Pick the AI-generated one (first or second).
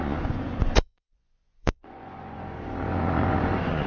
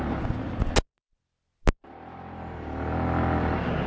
first